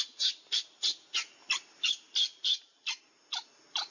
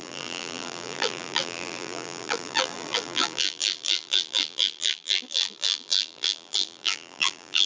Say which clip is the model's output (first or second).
second